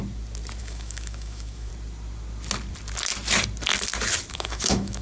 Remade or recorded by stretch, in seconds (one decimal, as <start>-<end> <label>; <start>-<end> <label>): 0.0-0.6 recorded; 0.6-1.7 remade; 1.7-4.3 recorded; 4.3-5.0 remade